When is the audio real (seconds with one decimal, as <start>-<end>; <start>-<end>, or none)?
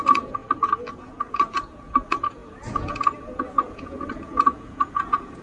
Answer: 0.4-0.9